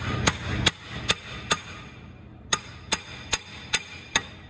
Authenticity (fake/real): real